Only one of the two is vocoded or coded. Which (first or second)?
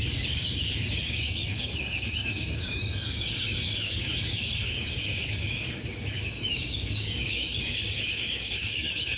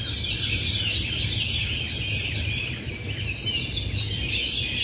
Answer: first